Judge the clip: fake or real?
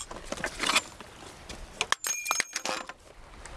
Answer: real